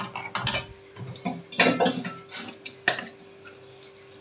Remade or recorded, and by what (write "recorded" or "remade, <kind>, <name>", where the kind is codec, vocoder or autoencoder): recorded